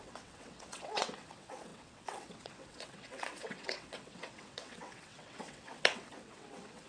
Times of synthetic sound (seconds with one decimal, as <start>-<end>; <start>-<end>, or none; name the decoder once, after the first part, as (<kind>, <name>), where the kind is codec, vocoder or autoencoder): 0.0-6.9 (vocoder, WaveNeXt)